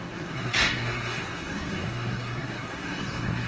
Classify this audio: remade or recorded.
remade